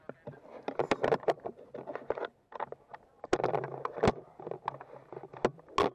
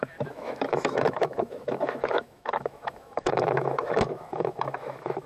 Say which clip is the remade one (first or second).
second